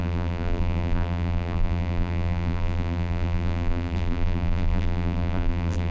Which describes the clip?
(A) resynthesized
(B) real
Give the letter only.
A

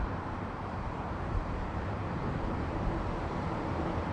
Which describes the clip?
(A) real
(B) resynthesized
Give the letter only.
B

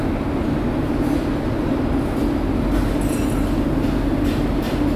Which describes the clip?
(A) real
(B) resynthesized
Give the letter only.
A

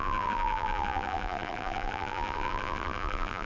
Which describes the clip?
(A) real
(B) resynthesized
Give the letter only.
B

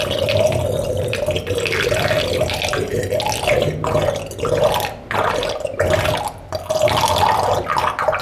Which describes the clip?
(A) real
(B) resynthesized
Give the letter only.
A